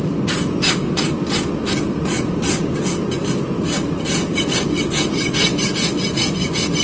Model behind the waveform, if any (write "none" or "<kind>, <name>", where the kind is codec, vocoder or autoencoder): none